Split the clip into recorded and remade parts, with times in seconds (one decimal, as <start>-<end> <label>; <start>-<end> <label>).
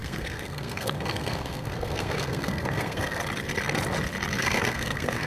0.0-3.2 remade; 3.2-4.4 recorded; 4.4-5.3 remade